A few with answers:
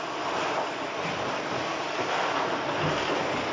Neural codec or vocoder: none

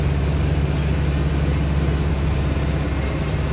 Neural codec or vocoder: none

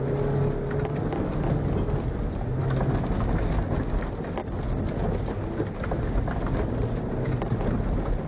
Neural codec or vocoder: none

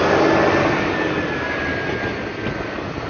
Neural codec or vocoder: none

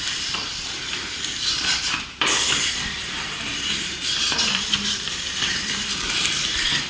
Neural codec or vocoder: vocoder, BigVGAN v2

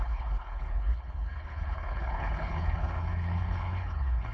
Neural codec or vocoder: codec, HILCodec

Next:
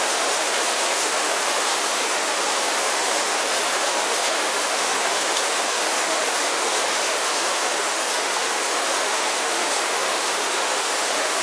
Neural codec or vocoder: autoencoder, DAC-VAE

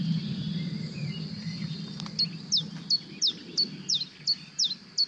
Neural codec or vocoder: none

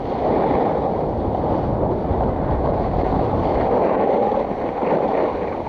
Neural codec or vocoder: none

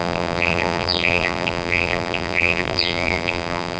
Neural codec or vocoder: vocoder, BigVGAN v2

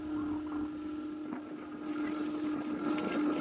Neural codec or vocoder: none